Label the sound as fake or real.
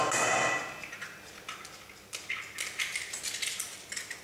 real